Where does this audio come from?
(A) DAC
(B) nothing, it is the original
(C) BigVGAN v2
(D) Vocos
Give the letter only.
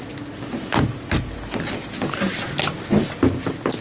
B